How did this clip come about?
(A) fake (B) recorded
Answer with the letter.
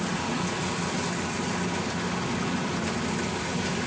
B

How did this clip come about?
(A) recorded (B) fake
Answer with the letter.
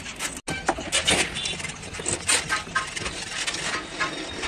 A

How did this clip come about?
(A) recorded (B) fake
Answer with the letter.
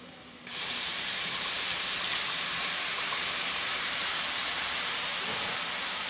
B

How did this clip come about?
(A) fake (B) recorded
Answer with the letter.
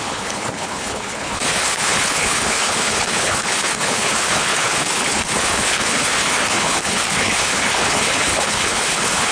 A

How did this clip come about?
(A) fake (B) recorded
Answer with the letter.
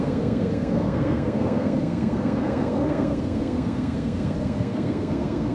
A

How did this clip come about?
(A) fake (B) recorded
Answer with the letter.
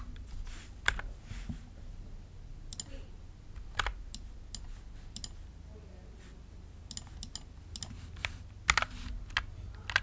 B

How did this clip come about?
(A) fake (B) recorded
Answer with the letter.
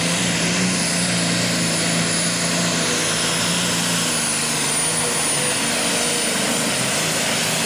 B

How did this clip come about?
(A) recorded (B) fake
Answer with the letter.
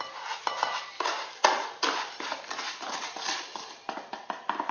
A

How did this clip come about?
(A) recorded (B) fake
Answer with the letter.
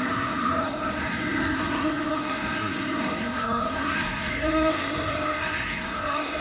B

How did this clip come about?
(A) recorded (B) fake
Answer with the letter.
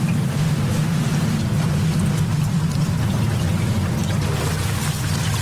A